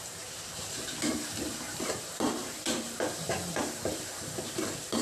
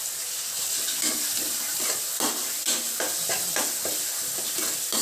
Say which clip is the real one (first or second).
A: second